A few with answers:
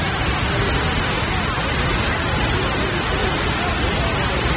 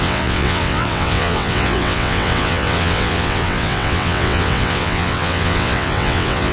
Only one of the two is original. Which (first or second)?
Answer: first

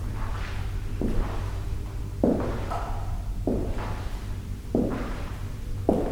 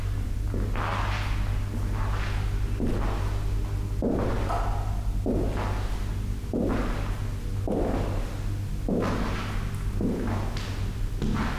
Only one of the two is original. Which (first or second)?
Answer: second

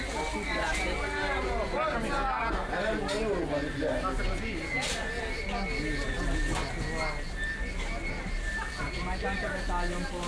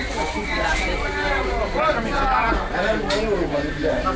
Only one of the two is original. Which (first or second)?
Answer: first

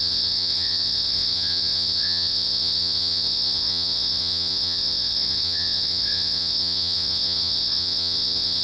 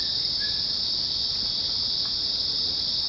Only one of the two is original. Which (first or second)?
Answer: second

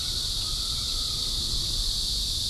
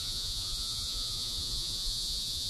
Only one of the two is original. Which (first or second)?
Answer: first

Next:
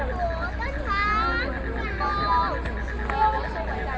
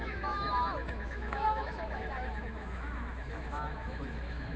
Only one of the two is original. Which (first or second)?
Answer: first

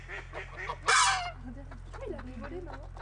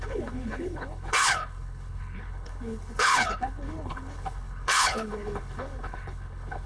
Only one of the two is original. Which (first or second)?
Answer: first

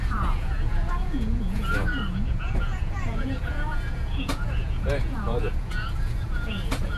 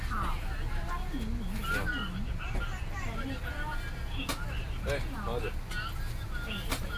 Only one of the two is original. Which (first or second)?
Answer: second